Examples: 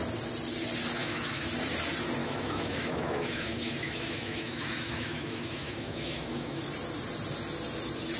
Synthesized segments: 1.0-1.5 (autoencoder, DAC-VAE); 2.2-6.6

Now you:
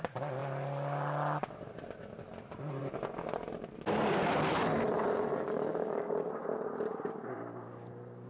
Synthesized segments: 5.7-6.3 (codec, DAC)